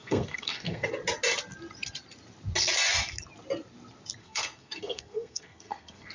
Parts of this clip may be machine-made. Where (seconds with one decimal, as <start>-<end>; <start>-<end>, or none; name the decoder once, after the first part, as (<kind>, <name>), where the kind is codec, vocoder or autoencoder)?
0.0-0.9 (codec, SNAC); 4.2-6.1